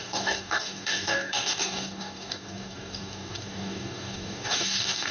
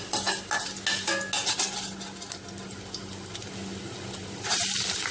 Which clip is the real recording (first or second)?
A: second